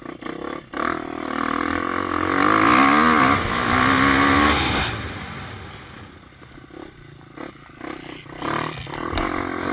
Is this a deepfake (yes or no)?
no